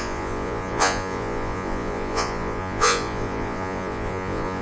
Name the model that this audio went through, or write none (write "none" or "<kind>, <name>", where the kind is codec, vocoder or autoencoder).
vocoder, Vocos